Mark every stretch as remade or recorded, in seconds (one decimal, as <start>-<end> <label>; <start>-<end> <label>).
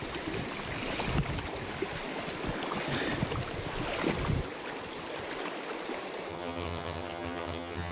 0.0-6.3 recorded; 6.3-7.9 remade